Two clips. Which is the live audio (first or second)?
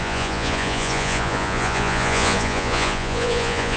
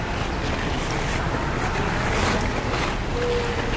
second